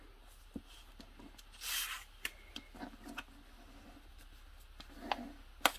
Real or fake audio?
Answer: real